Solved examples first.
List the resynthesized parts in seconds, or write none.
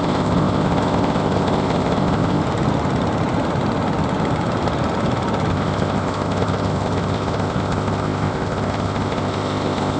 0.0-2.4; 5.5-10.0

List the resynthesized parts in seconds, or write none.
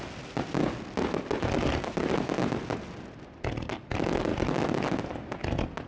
none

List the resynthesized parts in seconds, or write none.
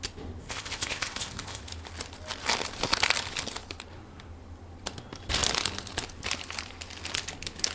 0.4-1.6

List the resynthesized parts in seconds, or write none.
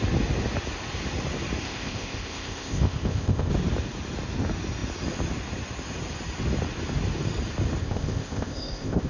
1.6-3.5; 7.8-9.1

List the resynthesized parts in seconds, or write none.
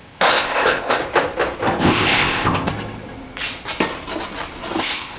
0.0-1.0; 1.8-2.7; 4.8-5.2